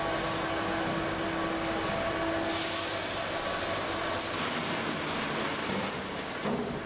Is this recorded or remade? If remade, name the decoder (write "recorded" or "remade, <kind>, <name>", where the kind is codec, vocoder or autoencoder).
recorded